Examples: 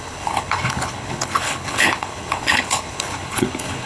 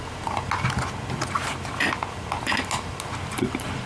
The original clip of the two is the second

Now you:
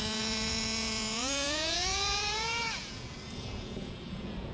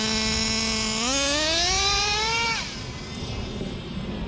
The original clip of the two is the second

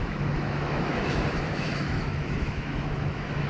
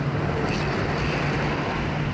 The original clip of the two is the second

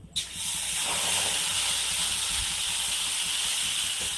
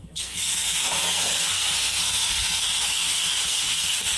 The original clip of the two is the first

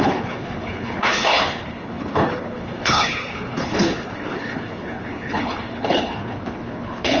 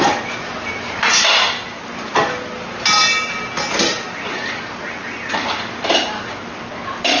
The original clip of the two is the second